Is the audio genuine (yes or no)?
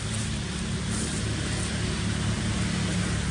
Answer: yes